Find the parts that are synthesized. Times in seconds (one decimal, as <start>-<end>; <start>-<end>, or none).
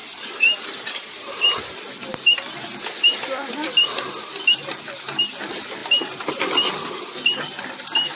0.0-1.6; 5.8-6.4